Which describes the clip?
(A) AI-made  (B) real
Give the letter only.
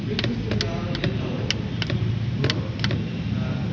B